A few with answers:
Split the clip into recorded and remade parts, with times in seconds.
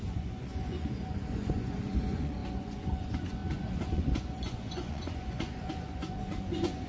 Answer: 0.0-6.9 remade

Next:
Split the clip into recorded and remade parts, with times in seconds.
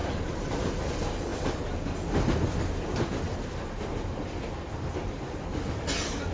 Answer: 0.0-0.7 remade; 0.7-6.3 recorded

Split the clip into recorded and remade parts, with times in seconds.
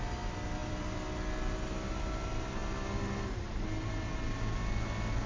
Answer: 0.0-0.6 recorded; 0.6-1.1 remade; 1.1-5.3 recorded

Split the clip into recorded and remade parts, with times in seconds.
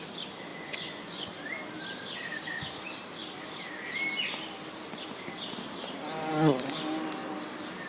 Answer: 0.0-0.5 recorded; 0.5-1.3 remade; 1.3-7.9 recorded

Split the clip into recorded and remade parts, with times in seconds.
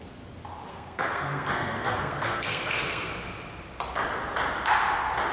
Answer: 0.0-0.7 recorded; 0.7-3.1 remade; 3.1-5.3 recorded